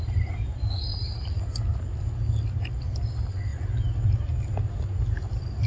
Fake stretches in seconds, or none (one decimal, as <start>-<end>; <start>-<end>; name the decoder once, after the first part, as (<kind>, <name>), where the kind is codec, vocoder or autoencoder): none